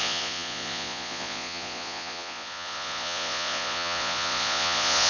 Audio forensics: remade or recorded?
remade